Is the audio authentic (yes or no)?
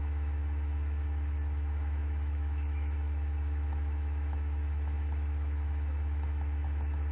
no